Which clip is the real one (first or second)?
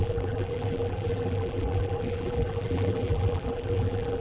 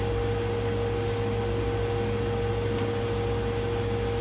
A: second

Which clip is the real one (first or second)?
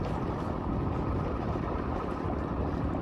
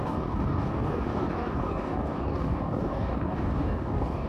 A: first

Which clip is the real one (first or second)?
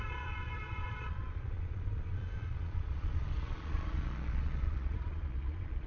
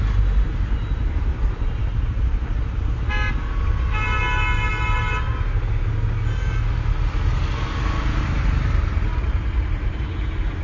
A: second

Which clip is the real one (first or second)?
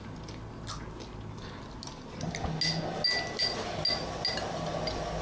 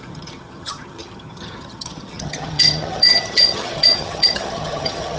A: first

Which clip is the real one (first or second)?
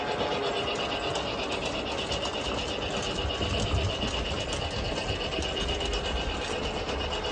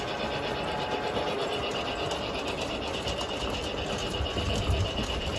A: first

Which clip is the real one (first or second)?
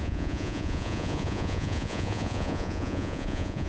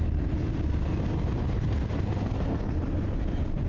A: second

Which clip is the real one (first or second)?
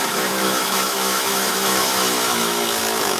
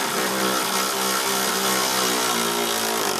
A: second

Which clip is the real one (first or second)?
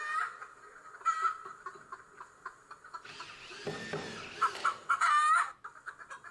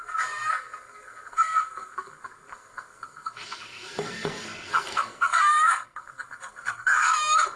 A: first